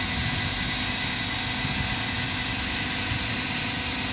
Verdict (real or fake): real